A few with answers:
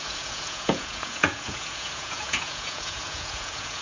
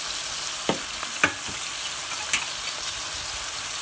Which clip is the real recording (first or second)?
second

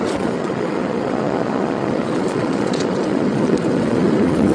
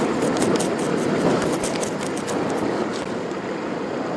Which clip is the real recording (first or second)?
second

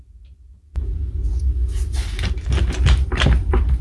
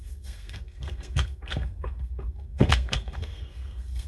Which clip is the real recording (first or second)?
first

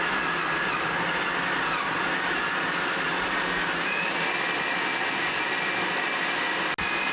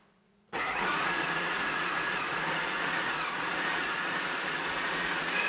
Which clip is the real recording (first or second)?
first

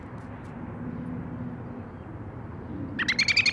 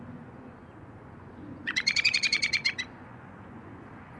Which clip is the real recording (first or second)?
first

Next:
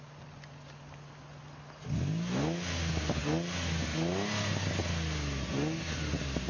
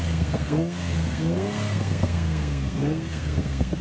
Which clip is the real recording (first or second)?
first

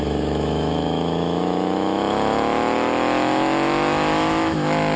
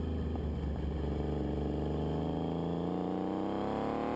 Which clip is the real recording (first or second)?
second